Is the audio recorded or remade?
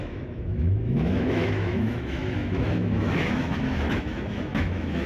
remade